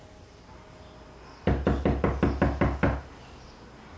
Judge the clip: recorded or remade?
recorded